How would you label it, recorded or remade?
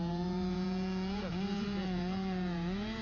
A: remade